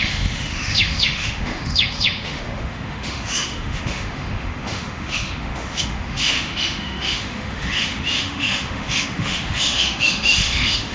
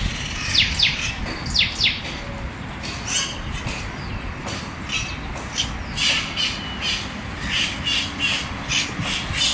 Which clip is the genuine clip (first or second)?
second